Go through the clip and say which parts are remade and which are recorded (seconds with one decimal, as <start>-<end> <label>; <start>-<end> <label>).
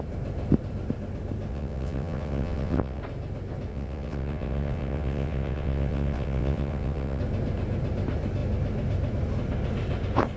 0.0-1.5 recorded; 1.5-3.0 remade; 3.0-3.7 recorded; 3.7-7.2 remade; 7.2-10.4 recorded